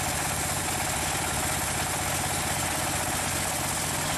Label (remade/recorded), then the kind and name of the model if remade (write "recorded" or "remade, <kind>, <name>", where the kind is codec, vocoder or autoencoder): recorded